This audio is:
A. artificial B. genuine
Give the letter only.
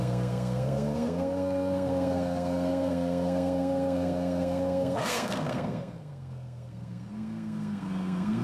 A